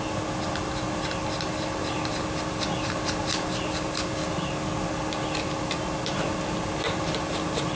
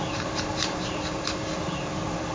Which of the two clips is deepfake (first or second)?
second